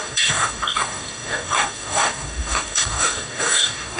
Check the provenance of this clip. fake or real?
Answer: fake